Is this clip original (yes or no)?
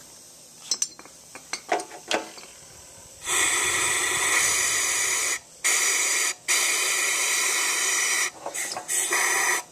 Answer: yes